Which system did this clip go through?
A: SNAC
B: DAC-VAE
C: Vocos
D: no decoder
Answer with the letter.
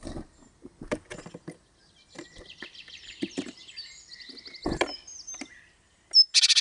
D